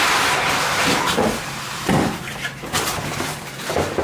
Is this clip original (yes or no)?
yes